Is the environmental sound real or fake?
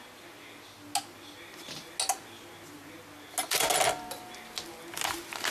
real